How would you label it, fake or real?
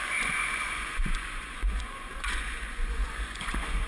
fake